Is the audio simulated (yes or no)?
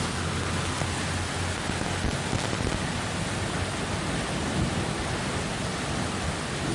no